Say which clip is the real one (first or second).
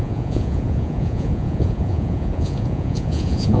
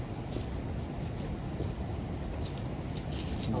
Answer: second